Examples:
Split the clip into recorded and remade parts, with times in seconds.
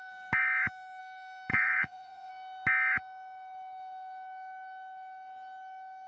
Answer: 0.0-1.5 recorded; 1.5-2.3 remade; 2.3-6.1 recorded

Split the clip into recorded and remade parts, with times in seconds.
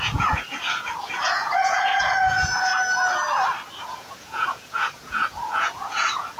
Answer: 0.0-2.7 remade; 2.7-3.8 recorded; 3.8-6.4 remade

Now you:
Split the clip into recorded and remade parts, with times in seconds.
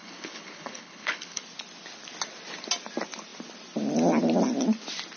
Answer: 0.0-1.4 remade; 1.4-5.2 recorded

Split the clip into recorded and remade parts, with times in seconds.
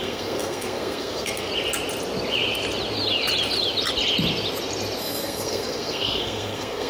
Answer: 0.0-1.5 remade; 1.5-5.0 recorded; 5.0-6.9 remade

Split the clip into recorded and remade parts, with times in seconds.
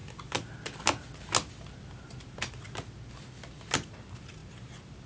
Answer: 0.0-5.1 recorded